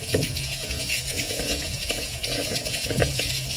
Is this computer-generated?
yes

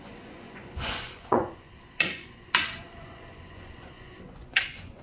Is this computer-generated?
yes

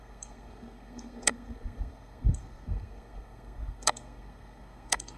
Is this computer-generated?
yes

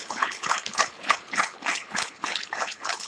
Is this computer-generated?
yes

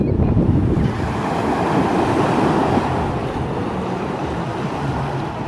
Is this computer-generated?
no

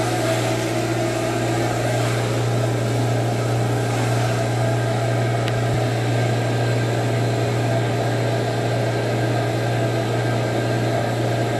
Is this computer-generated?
no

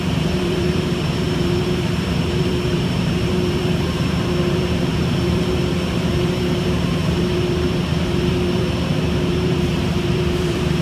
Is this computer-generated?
yes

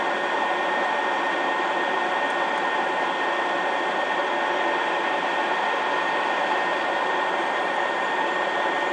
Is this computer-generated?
no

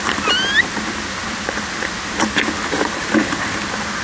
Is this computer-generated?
no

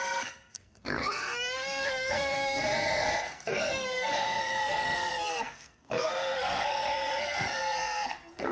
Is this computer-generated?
yes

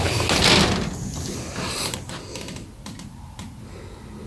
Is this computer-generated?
no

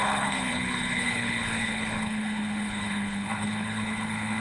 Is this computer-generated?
yes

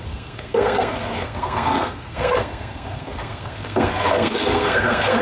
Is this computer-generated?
yes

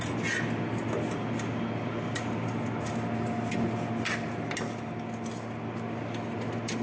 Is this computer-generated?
no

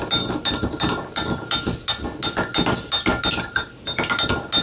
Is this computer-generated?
no